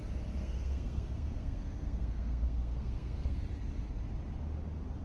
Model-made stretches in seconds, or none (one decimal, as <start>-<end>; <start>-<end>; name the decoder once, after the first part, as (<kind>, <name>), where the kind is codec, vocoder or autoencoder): 0.4-3.4 (codec, SNAC)